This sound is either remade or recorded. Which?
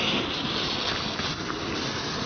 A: recorded